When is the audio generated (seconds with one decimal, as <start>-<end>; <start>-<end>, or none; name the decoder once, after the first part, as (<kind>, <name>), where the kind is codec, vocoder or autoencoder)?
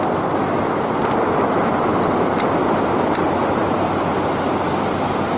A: none